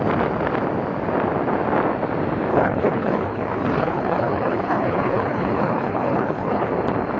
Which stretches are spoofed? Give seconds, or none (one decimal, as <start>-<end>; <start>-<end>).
2.5-6.7